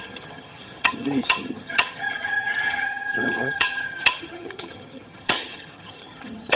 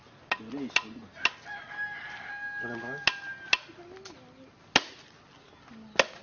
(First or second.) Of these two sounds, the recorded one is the second